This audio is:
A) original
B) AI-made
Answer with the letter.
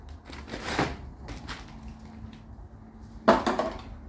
A